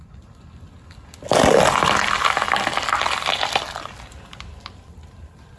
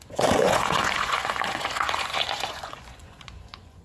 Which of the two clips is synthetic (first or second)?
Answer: second